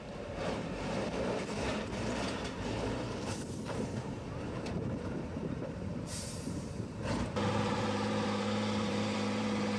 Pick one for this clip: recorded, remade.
remade